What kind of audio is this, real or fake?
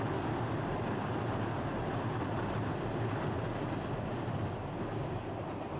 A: real